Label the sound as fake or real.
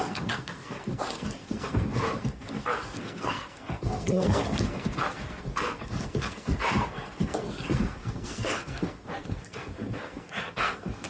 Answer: fake